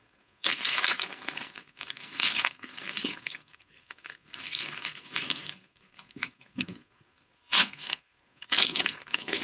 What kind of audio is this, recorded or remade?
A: remade